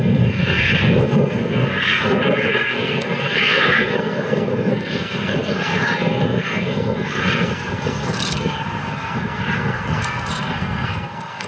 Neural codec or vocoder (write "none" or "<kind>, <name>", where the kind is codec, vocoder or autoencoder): codec, SNAC